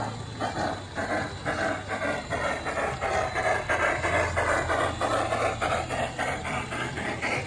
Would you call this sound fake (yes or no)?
no